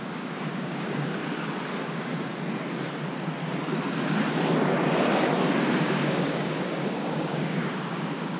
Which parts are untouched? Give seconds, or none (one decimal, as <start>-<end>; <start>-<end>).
1.2-1.9; 2.3-5.7